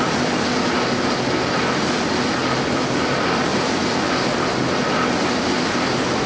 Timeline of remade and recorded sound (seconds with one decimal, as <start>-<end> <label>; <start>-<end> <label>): 0.0-2.4 recorded; 2.4-3.0 remade; 3.0-3.5 recorded; 3.5-4.1 remade; 4.1-6.3 recorded